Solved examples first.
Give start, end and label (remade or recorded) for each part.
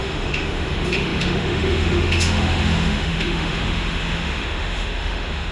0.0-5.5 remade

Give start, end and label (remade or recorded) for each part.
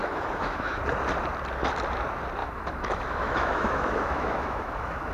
0.0-0.8 remade; 0.8-2.4 recorded; 2.4-5.1 remade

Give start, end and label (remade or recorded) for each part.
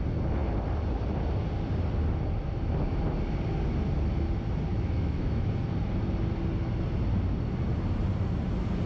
0.0-4.7 recorded; 4.7-5.5 remade; 5.5-8.9 recorded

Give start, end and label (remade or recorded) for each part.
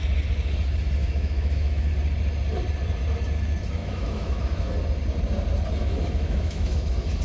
0.0-1.0 recorded; 1.0-1.9 remade; 1.9-3.8 recorded; 3.8-4.7 remade; 4.7-5.8 recorded; 5.8-7.2 remade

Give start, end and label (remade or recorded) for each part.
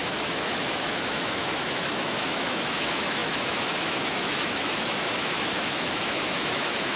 0.0-7.0 remade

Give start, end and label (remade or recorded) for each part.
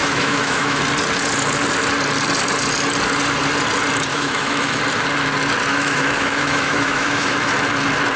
0.0-0.8 remade; 0.8-4.1 recorded; 4.1-4.8 remade; 4.8-5.7 recorded; 5.7-7.5 remade; 7.5-8.2 recorded